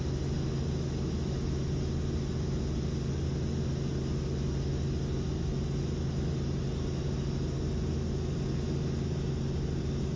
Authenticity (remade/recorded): recorded